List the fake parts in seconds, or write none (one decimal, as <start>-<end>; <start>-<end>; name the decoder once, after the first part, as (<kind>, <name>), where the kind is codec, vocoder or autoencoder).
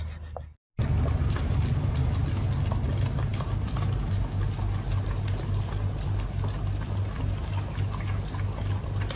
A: none